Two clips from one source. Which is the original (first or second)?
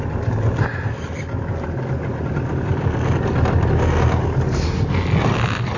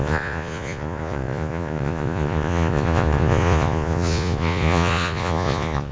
first